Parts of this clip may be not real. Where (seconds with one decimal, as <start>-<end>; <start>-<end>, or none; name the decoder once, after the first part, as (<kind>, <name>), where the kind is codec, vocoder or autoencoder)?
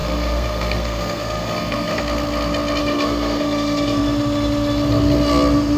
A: 0.0-2.0 (codec, SNAC); 2.8-4.0